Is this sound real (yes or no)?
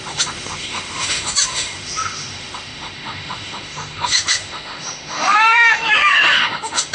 no